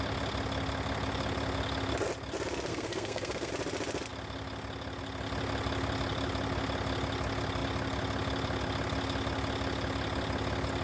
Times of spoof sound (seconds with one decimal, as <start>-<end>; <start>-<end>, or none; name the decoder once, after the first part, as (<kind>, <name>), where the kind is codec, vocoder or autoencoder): 2.7-3.5 (codec, SNAC)